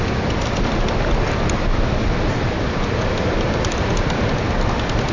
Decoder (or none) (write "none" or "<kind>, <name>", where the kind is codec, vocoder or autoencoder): none